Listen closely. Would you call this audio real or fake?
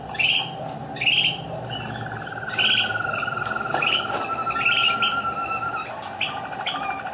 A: real